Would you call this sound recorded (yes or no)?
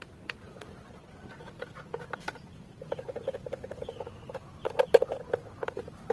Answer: yes